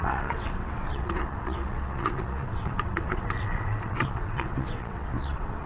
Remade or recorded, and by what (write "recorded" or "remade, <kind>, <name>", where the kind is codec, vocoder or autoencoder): remade, vocoder, WaveNeXt